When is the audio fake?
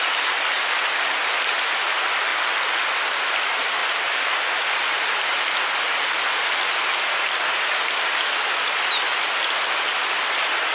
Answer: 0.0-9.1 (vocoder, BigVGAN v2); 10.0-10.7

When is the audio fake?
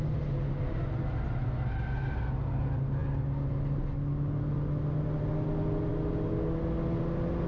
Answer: none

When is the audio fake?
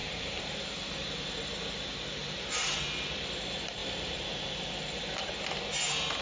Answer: 0.0-1.5 (vocoder, BigVGAN v2); 2.2-2.8; 3.8-5.3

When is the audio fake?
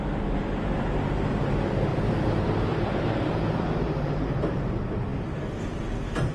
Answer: 1.9-4.6 (vocoder, BigVGAN v2)